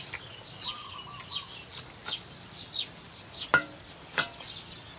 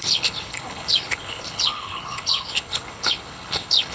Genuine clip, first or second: first